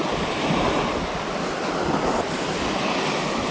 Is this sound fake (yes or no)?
no